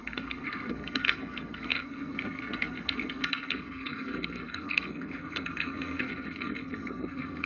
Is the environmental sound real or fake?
fake